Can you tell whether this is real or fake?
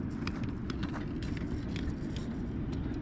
real